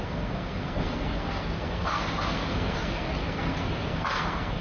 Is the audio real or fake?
fake